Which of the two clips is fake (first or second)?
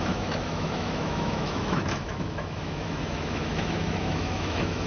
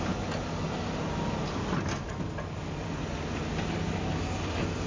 first